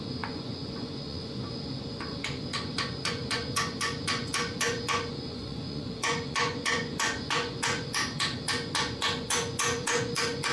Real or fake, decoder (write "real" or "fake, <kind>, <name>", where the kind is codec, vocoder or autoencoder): fake, vocoder, Vocos